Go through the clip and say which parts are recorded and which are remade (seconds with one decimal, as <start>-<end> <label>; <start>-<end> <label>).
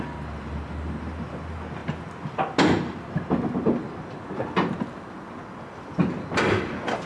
0.0-7.1 recorded